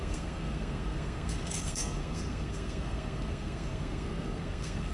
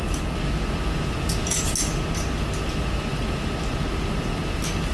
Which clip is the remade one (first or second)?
first